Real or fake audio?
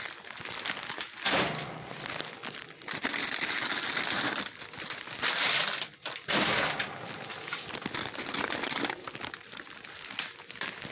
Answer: real